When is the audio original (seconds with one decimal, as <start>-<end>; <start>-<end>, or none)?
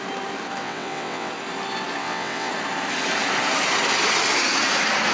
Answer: 0.0-0.6; 1.3-2.0; 2.5-5.1